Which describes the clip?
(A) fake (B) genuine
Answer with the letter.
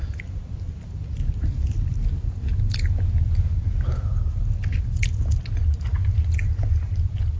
B